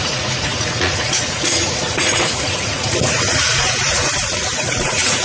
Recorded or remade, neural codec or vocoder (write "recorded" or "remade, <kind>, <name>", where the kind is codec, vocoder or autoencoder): remade, vocoder, Vocos